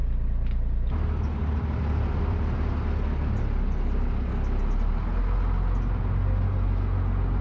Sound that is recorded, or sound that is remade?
recorded